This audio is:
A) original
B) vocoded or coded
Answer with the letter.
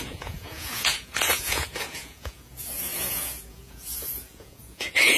B